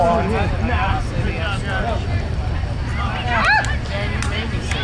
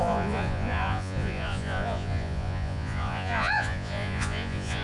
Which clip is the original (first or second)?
first